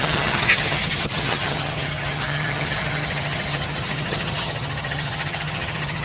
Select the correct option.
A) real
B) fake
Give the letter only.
B